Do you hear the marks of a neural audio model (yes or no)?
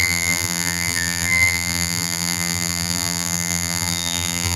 yes